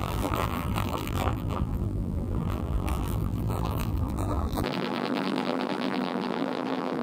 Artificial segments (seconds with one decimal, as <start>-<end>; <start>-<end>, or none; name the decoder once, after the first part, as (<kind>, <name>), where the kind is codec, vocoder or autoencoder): 0.0-7.0 (vocoder, BigVGAN v2)